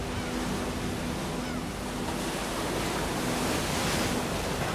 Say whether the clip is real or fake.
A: real